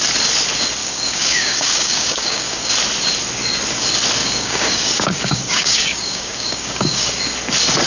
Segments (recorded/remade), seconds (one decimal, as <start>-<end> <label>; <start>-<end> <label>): 0.0-0.8 recorded; 0.8-2.7 remade; 2.7-4.2 recorded; 4.2-7.2 remade; 7.2-7.9 recorded